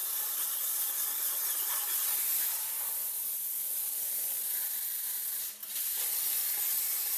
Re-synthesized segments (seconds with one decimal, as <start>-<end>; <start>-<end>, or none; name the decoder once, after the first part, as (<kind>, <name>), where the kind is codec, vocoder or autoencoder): 3.2-4.5 (vocoder, BigVGAN v2); 5.6-6.2